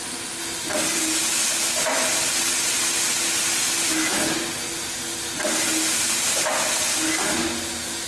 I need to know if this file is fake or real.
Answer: real